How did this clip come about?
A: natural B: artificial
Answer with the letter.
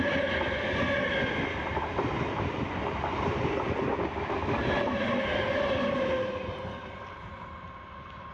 A